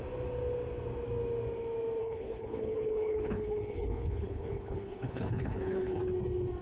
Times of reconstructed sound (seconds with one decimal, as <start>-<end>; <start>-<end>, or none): 2.0-6.0